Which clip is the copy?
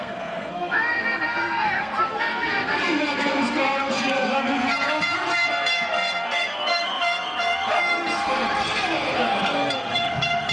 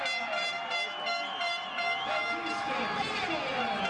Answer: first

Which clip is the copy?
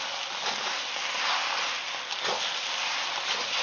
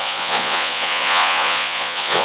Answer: second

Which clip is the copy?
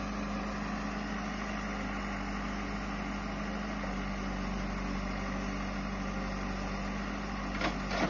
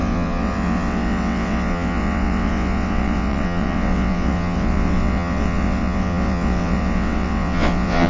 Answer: second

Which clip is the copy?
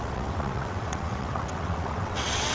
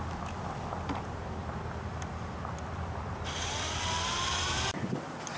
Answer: first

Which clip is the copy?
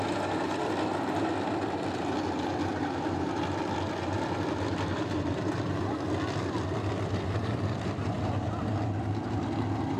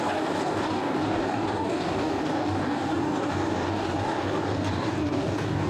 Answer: second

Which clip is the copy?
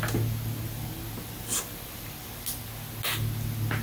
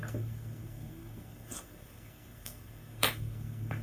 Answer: second